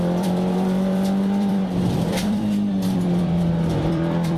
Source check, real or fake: fake